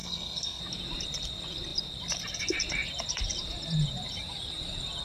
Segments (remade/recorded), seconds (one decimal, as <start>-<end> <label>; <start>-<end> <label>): 0.0-0.6 remade; 0.6-5.0 recorded